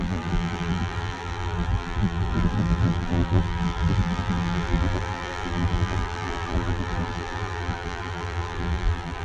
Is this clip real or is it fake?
fake